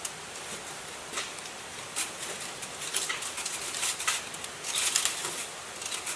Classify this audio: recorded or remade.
recorded